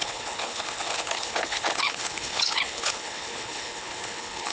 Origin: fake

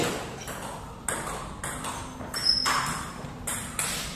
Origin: real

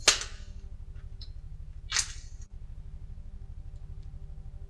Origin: real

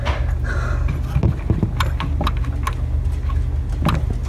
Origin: real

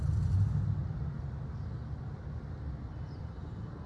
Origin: real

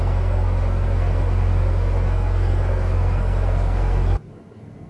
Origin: fake